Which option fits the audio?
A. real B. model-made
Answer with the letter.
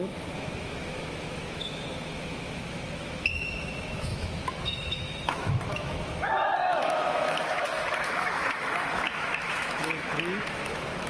B